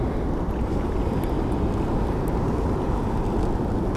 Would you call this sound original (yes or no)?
yes